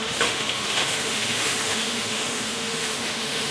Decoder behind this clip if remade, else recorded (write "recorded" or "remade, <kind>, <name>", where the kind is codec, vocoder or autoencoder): remade, autoencoder, DAC-VAE